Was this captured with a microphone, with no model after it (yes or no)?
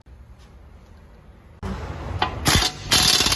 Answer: yes